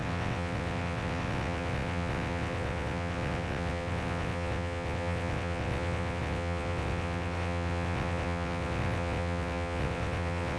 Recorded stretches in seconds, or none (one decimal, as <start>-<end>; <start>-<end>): none